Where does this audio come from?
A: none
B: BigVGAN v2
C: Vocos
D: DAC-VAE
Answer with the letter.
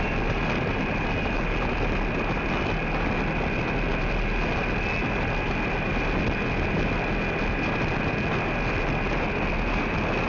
A